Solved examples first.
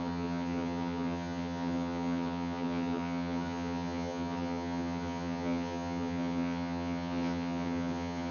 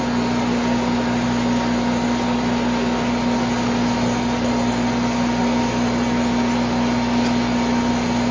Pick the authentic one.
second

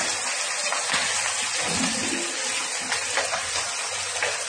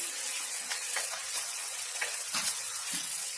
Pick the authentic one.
first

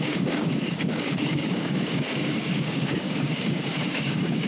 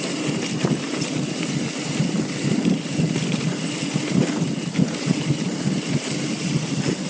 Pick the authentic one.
second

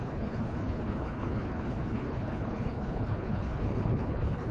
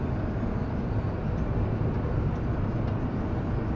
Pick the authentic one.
second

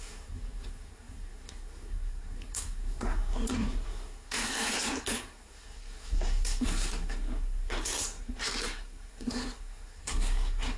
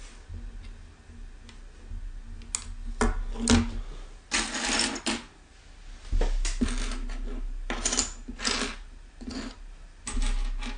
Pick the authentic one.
second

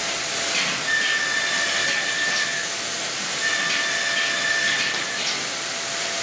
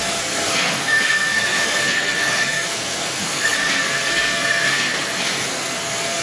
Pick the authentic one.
first